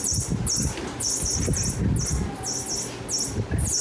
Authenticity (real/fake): real